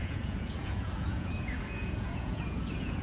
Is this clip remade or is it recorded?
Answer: remade